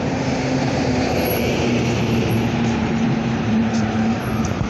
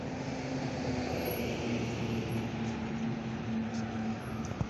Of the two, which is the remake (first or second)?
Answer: first